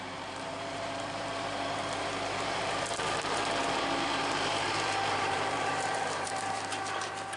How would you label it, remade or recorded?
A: remade